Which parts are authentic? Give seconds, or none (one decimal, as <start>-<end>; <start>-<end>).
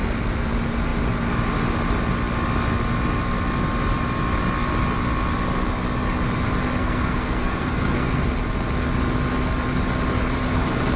0.0-6.8; 8.2-11.0